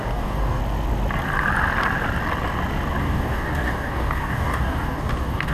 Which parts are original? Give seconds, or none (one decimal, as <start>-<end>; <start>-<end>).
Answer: 0.6-3.0